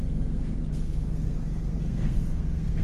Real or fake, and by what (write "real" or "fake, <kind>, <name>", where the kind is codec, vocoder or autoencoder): fake, codec, SNAC